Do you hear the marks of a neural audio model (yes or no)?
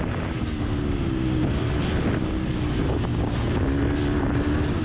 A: no